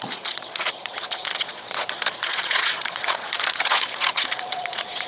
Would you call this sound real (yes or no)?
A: no